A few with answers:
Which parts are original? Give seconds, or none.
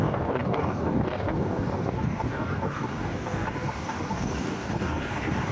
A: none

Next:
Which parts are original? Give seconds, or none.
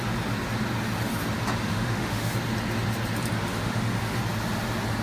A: 0.0-1.7; 2.3-3.5; 4.2-5.0